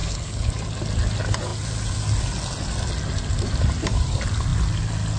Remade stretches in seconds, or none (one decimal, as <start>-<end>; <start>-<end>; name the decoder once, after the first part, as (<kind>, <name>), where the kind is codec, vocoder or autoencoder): 0.0-0.5 (codec, HILCodec)